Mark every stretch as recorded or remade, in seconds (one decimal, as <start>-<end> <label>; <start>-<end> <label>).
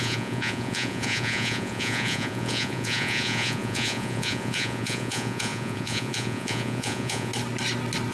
0.0-7.3 remade; 7.3-8.1 recorded